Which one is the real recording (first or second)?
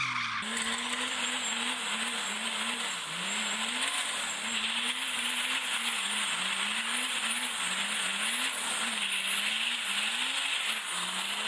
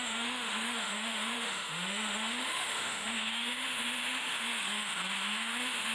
first